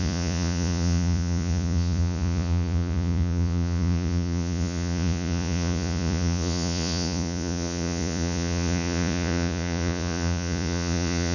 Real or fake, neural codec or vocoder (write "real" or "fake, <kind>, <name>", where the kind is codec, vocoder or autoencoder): fake, vocoder, Vocos